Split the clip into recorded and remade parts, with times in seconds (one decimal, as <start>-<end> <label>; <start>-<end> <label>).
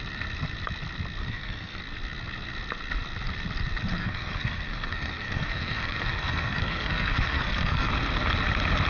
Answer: 0.0-1.2 recorded; 1.2-1.8 remade; 1.8-4.0 recorded; 4.0-7.9 remade; 7.9-8.9 recorded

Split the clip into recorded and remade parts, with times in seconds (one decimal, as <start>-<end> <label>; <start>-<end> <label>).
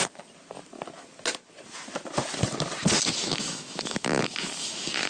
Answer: 0.0-3.2 recorded; 3.2-5.1 remade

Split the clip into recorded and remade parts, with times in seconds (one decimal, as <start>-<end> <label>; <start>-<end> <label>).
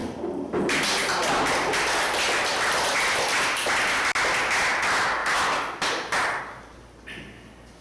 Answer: 0.0-7.8 recorded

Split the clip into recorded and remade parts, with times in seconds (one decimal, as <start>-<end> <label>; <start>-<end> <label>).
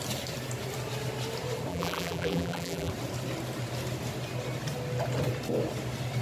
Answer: 0.0-1.7 recorded; 1.7-2.9 remade; 2.9-6.2 recorded